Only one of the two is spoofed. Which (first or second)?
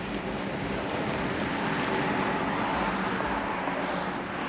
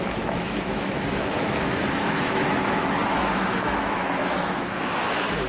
second